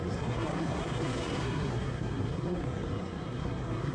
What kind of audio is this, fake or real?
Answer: fake